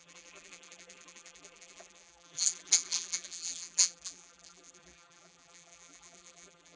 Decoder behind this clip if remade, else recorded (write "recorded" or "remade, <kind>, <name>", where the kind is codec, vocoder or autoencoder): remade, vocoder, BigVGAN v2